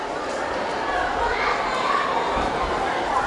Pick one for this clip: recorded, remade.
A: recorded